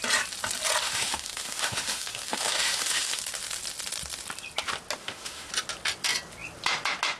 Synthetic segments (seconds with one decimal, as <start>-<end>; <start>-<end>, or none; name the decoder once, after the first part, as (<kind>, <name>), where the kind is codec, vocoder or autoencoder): 0.8-3.2 (autoencoder, DAC-VAE); 5.0-5.5